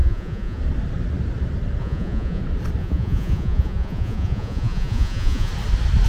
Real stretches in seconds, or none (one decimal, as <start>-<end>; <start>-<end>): 0.6-1.8; 2.4-2.8; 5.5-6.1